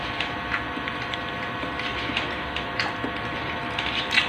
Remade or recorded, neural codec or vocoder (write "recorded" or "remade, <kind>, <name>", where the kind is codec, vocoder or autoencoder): remade, vocoder, BigVGAN v2